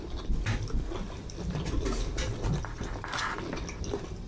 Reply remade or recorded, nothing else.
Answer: recorded